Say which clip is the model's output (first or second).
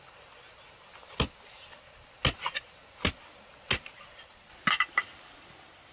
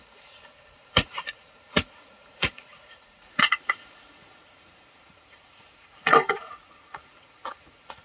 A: second